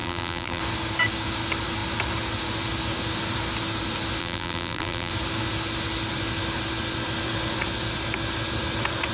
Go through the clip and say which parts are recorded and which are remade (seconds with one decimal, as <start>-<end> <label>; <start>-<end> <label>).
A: 0.0-0.6 remade; 0.6-4.2 recorded; 4.2-5.1 remade; 5.1-9.1 recorded